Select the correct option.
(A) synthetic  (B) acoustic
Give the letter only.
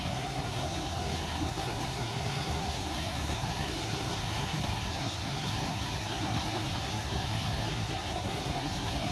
A